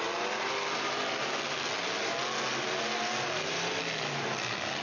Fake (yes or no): no